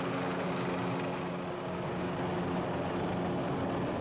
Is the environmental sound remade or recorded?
recorded